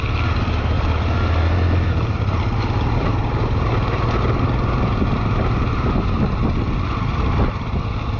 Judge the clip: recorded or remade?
recorded